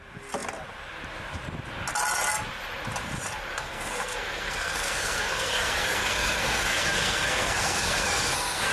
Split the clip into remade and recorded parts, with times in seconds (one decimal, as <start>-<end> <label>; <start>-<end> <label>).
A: 0.0-3.5 recorded; 3.5-8.7 remade